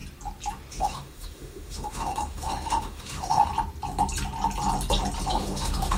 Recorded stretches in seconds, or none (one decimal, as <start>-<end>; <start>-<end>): 0.0-0.7; 3.5-5.3